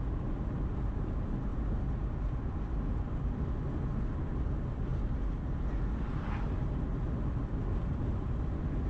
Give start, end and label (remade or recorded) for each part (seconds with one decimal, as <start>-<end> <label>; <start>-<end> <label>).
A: 0.0-8.9 recorded